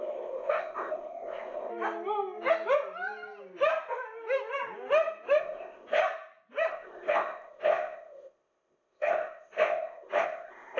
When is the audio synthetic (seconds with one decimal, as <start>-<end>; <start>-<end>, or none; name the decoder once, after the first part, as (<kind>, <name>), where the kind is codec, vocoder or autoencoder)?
0.0-1.7 (codec, ZipCodec); 5.4-6.0; 6.7-10.8